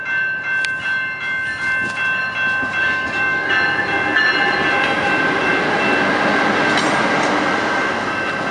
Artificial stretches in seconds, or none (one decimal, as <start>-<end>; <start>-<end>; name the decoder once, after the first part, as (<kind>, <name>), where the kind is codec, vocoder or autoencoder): 2.8-3.5 (codec, DAC)